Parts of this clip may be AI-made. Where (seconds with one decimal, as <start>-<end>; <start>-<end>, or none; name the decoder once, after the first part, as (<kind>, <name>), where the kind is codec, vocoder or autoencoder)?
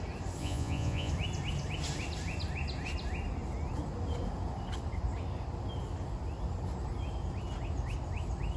0.4-1.1 (vocoder, Vocos)